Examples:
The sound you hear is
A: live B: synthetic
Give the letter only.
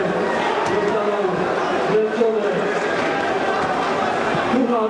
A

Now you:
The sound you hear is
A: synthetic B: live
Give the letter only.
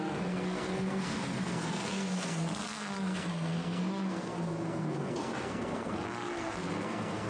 A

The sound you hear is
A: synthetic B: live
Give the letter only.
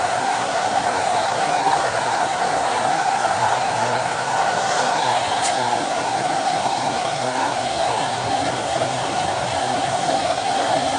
A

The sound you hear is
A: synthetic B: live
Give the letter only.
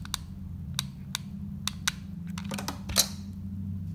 B